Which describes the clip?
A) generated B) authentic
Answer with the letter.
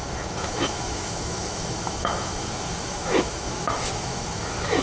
A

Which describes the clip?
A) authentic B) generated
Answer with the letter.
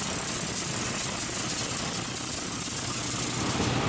A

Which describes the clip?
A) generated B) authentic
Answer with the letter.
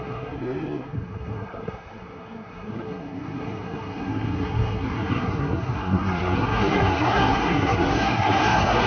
A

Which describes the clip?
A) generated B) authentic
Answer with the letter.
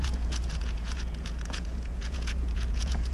A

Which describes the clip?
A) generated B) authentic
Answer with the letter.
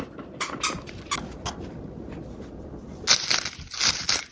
B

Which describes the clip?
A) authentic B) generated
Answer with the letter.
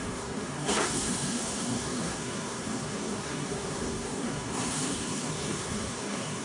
B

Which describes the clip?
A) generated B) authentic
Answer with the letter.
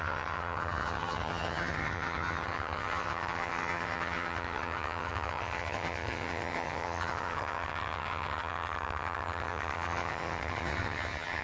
A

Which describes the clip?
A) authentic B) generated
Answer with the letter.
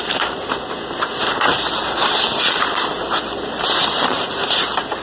A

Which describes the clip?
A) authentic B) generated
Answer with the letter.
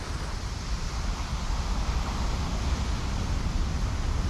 A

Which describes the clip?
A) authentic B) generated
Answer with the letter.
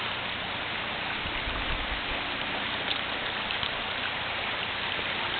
A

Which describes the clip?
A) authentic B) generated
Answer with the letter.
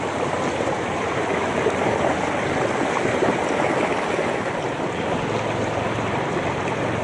A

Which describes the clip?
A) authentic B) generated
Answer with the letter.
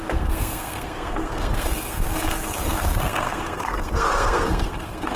B